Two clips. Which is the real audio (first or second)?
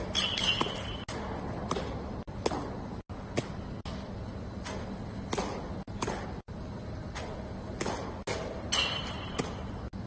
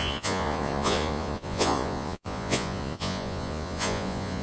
first